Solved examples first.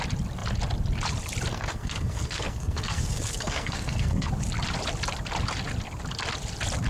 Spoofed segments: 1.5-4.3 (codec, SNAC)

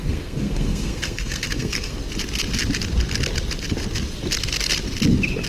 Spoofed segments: 0.0-2.0 (codec, SNAC)

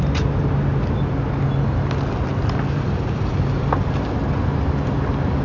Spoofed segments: 2.3-3.5 (vocoder, BigVGAN v2)